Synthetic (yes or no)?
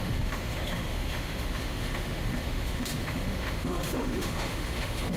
yes